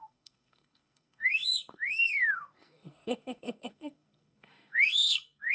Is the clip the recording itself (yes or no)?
no